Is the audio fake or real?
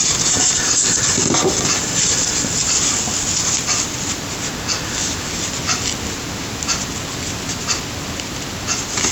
real